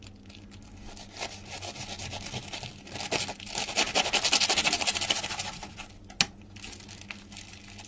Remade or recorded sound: recorded